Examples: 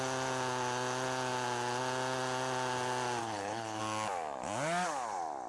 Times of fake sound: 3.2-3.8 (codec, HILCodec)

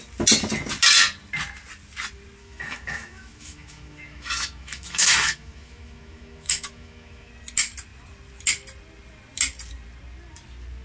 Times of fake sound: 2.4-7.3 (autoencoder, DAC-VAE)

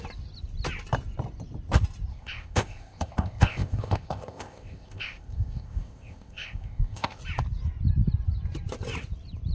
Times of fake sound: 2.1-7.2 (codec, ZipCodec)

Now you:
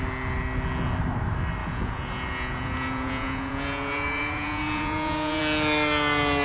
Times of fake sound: 1.6-5.4 (vocoder, Vocos)

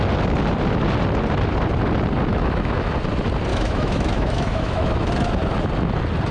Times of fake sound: 2.3-2.9 (autoencoder, DAC-VAE); 3.5-5.1